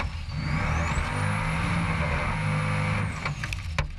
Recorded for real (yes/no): yes